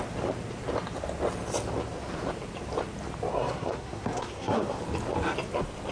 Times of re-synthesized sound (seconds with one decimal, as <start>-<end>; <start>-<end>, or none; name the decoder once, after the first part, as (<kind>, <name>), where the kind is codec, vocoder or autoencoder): 3.3-4.8 (codec, SNAC)